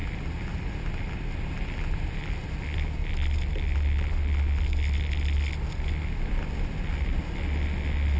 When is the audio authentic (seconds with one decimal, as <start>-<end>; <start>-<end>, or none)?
0.0-8.2